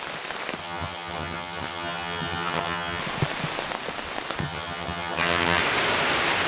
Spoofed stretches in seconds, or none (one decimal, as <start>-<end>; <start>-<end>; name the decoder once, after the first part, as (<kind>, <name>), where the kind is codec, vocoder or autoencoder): 0.6-3.0 (vocoder, HiFi-GAN); 4.4-5.6